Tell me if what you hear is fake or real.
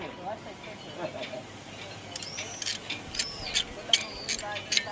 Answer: real